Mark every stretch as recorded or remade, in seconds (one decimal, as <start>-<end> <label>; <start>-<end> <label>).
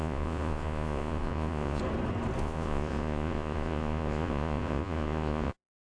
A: 0.0-1.8 remade; 1.8-2.4 recorded; 2.4-5.8 remade